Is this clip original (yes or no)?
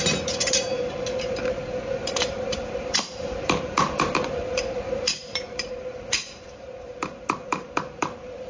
no